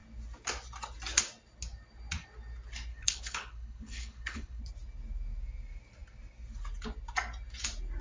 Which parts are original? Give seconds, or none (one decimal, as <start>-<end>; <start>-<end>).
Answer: 0.0-2.9; 4.6-8.0